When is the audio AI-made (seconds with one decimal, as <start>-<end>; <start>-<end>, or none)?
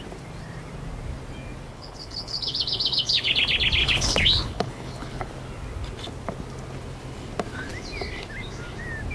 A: 1.7-3.3; 3.8-5.3